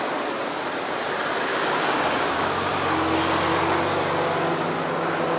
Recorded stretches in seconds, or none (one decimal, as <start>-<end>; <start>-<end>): 0.0-1.5; 2.7-5.4